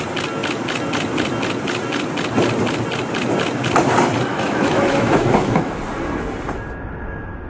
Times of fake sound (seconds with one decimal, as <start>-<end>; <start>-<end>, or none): 4.3-5.7